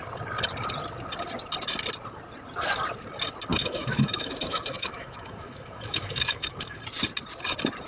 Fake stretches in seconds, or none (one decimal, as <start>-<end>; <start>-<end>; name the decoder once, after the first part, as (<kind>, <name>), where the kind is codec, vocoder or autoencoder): 3.5-6.8 (autoencoder, DAC-VAE)